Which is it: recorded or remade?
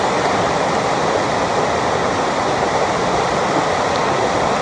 recorded